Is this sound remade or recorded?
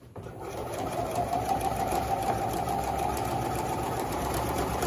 remade